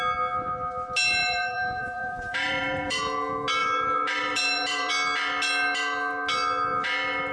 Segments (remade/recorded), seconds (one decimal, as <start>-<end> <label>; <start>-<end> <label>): 0.0-1.2 recorded; 1.2-3.0 remade; 3.0-3.6 recorded; 3.6-4.9 remade; 4.9-7.3 recorded